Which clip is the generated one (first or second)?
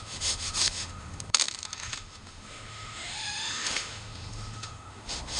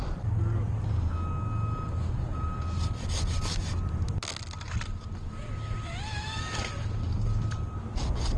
first